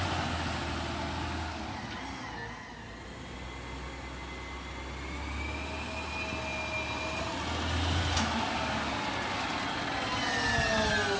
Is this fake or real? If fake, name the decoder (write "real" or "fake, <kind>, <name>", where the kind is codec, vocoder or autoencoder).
real